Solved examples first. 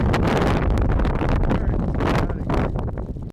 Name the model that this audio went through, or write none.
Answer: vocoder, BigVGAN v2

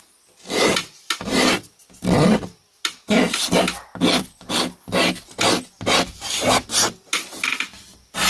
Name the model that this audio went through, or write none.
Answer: none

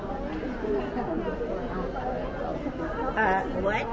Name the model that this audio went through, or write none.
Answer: none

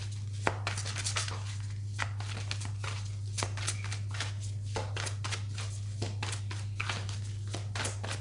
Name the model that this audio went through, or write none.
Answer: none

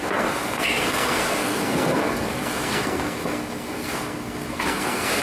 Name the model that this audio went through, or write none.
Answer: codec, SNAC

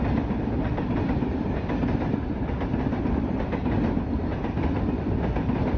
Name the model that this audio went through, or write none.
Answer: none